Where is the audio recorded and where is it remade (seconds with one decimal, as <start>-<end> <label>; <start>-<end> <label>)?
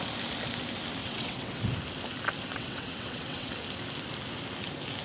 0.0-1.0 recorded; 1.0-1.6 remade; 1.6-2.5 recorded; 2.5-3.5 remade; 3.5-5.0 recorded